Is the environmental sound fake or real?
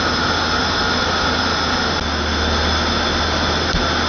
real